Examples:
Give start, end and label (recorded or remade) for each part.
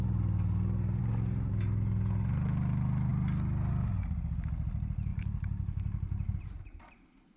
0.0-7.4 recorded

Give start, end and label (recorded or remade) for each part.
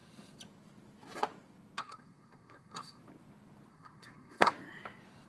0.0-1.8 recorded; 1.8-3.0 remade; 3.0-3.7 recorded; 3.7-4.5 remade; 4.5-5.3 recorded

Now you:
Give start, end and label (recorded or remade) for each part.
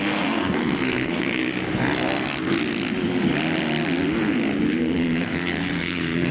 0.0-1.4 remade; 1.4-4.8 recorded; 4.8-6.3 remade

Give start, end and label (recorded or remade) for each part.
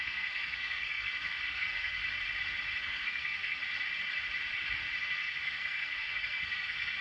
0.0-2.0 remade; 2.0-2.8 recorded; 2.8-3.6 remade; 3.6-5.0 recorded; 5.0-7.0 remade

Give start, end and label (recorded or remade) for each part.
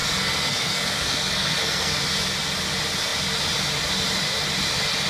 0.0-2.0 remade; 2.0-5.1 recorded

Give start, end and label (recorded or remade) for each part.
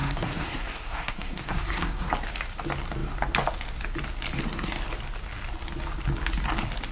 0.0-2.1 remade; 2.1-6.9 recorded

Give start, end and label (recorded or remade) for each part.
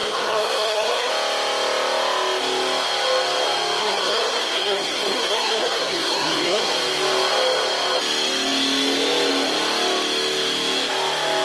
0.0-1.1 remade; 1.1-3.8 recorded; 3.8-6.7 remade; 6.7-11.4 recorded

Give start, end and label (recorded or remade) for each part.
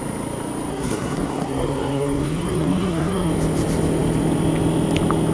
0.0-0.7 recorded; 0.7-3.3 remade; 3.3-5.3 recorded